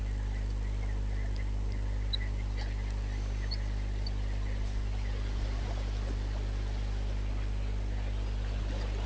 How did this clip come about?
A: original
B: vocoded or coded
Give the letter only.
A